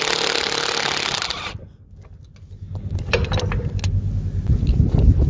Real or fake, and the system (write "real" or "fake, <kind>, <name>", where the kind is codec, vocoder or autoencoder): real